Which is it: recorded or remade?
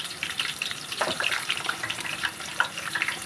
remade